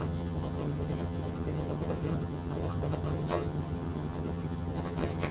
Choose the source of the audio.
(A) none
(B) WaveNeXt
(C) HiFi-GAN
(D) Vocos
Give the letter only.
C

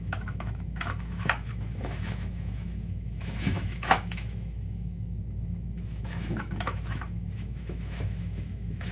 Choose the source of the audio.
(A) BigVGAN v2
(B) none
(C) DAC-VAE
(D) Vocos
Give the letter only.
C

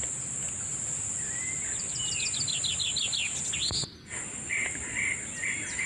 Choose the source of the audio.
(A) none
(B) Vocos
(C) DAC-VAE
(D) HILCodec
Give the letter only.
A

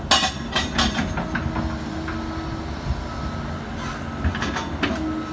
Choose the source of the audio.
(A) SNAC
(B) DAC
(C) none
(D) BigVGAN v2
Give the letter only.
C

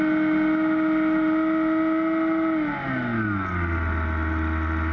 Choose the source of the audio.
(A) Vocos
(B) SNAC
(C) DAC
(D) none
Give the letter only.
D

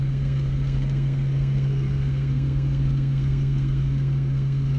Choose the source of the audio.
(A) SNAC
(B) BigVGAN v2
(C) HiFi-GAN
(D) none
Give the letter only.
A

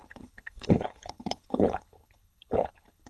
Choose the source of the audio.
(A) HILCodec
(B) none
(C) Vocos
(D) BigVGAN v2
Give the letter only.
A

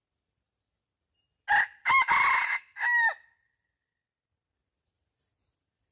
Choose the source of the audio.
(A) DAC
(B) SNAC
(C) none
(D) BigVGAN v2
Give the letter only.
C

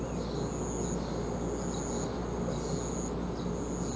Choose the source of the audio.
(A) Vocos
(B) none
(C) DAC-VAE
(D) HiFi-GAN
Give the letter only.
B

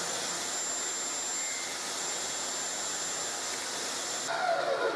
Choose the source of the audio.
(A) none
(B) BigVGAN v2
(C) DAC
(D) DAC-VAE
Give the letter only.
A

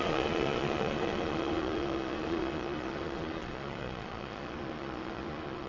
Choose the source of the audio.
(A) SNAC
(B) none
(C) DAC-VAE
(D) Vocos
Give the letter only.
D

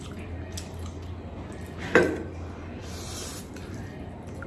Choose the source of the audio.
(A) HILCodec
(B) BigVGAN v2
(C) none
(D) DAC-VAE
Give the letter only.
C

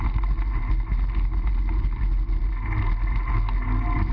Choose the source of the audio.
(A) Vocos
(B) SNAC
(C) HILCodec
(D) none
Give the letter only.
D